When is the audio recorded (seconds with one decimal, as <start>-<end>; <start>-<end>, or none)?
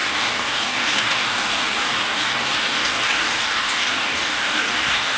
none